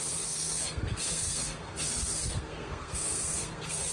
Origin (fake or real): fake